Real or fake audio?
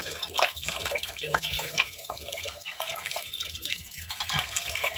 fake